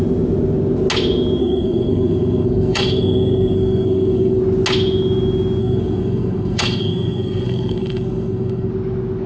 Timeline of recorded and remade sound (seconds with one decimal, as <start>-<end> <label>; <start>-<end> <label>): 0.0-1.4 recorded; 1.4-4.4 remade; 4.4-5.6 recorded; 5.6-8.7 remade; 8.7-9.3 recorded